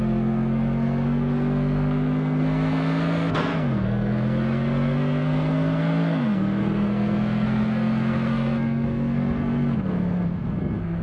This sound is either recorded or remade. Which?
remade